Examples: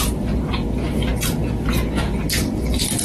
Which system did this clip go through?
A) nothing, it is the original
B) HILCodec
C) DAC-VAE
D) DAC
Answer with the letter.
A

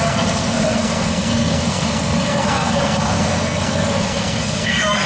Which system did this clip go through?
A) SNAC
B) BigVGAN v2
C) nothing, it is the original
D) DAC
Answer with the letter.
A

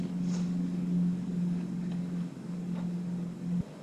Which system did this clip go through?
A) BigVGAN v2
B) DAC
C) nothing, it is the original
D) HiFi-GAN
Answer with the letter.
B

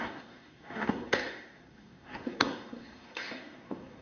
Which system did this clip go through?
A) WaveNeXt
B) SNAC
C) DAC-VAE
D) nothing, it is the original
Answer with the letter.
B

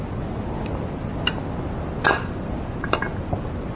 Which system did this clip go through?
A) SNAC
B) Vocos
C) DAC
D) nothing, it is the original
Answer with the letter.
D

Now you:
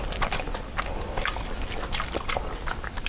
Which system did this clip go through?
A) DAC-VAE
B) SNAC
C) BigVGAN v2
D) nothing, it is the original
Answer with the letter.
D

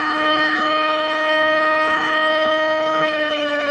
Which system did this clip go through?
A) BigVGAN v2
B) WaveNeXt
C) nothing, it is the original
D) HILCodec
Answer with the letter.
D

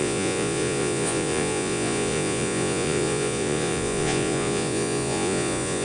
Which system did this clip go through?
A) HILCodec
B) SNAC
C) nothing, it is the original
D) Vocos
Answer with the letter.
D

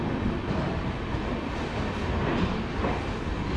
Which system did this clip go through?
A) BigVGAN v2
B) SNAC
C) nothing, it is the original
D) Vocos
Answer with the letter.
C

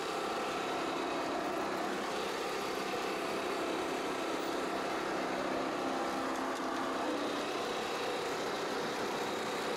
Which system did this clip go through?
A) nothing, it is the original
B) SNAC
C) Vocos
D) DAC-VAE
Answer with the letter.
A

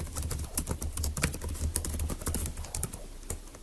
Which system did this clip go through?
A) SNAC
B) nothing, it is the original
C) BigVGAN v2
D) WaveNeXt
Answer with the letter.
B